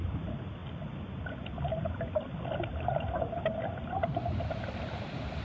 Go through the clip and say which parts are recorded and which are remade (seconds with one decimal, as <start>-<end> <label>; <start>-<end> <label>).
0.0-5.4 recorded